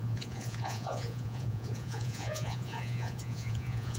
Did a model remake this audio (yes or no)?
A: yes